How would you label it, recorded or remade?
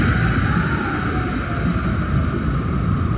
recorded